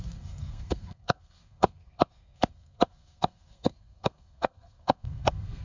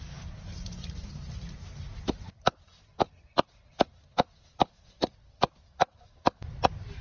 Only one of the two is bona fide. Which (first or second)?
second